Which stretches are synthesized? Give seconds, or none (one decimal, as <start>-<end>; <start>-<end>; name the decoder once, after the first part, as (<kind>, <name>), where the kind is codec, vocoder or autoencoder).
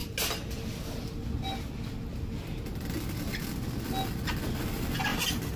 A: 5.1-5.6 (vocoder, BigVGAN v2)